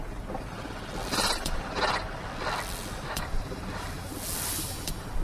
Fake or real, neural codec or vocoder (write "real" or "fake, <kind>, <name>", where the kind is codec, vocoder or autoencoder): fake, vocoder, BigVGAN v2